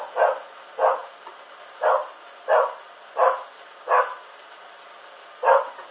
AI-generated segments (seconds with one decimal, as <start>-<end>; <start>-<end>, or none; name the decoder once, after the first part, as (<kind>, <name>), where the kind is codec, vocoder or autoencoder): none